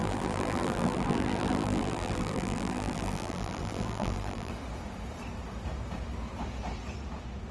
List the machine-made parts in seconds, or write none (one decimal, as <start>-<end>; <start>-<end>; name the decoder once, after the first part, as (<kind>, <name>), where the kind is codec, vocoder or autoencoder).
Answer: 0.0-4.5 (vocoder, BigVGAN v2)